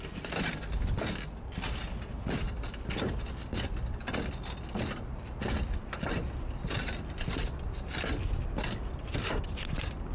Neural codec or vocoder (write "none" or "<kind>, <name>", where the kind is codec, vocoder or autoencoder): none